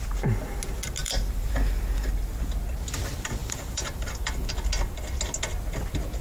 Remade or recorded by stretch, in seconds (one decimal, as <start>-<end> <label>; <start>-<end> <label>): 0.0-1.0 recorded; 1.0-2.1 remade; 2.1-3.4 recorded; 3.4-4.5 remade; 4.5-6.2 recorded

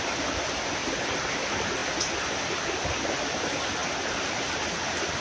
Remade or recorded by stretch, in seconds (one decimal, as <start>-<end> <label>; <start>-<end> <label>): 0.0-0.8 recorded; 0.8-1.4 remade; 1.4-5.2 recorded

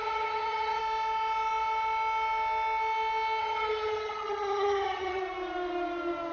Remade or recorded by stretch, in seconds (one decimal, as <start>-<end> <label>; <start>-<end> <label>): 0.0-0.8 remade; 0.8-3.4 recorded; 3.4-5.2 remade; 5.2-6.3 recorded